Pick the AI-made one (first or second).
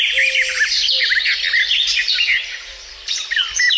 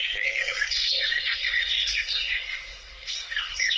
second